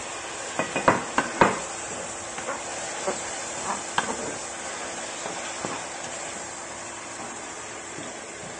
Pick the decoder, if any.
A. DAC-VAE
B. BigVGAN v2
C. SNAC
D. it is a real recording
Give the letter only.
D